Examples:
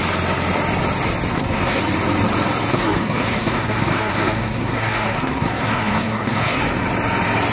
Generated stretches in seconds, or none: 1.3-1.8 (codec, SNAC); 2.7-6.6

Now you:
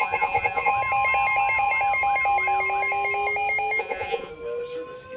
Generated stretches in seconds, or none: 0.0-0.7 (vocoder, Vocos); 3.8-4.3